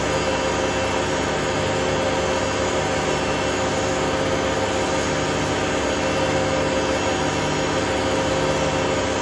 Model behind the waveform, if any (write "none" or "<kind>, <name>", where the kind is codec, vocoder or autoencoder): none